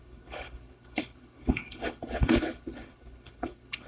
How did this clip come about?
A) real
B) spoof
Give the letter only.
B